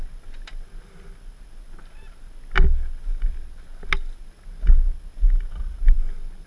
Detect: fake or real real